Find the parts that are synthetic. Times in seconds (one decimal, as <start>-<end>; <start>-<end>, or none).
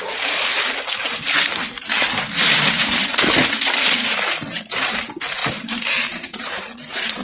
0.0-0.5; 4.6-7.2